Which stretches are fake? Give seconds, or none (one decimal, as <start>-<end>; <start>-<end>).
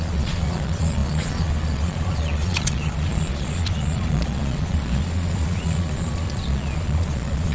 0.0-7.5